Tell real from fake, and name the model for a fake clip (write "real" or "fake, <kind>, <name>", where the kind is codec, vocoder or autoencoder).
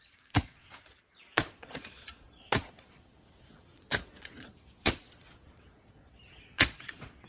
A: fake, vocoder, Vocos